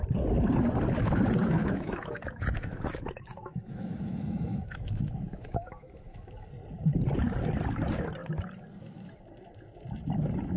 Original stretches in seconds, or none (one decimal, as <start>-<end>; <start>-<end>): 0.0-1.4; 6.5-10.6